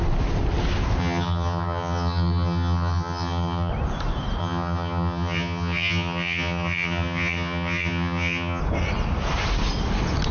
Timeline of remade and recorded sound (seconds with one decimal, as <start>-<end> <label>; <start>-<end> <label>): 0.0-1.0 recorded; 1.0-3.7 remade; 3.7-4.4 recorded; 4.4-8.6 remade; 8.6-10.3 recorded